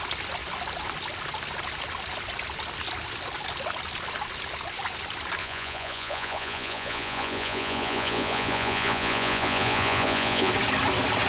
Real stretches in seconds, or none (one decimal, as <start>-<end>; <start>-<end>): 0.0-5.4; 10.5-11.3